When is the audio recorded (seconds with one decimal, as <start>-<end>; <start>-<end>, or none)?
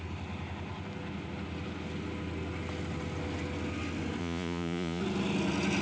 0.0-4.2; 5.0-5.8